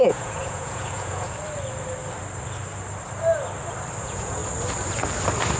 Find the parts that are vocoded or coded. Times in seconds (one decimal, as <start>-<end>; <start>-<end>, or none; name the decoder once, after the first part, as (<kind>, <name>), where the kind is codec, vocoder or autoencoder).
0.0-1.4 (vocoder, Vocos); 4.0-4.4